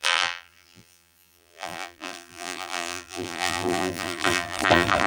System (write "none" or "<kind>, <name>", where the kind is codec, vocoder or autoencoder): vocoder, BigVGAN v2